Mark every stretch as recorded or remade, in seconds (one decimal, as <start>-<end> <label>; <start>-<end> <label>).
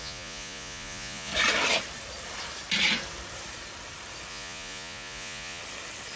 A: 0.0-1.3 remade; 1.3-4.3 recorded; 4.3-5.6 remade; 5.6-6.2 recorded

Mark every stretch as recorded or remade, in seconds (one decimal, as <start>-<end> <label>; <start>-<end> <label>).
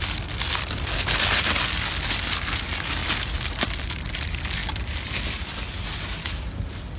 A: 0.0-7.0 recorded